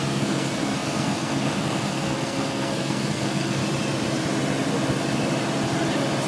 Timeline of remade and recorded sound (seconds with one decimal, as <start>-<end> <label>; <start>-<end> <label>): 0.0-3.6 remade; 3.6-6.3 recorded